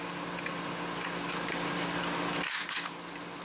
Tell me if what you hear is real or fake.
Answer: real